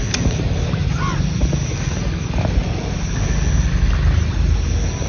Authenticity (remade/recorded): recorded